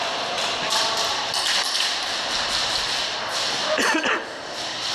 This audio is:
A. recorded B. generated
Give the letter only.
A